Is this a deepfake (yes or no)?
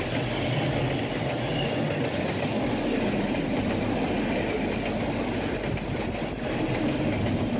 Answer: no